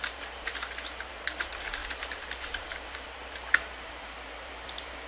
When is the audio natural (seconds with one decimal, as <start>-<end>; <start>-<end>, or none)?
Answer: 0.5-1.1